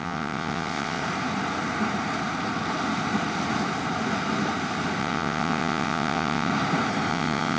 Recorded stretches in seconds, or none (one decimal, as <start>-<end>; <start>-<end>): 1.0-5.0; 6.5-7.1